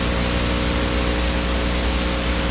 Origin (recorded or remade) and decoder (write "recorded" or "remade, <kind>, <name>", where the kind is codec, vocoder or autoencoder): recorded